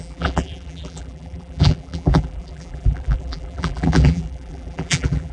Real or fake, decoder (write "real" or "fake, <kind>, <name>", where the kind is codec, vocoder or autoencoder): fake, vocoder, BigVGAN v2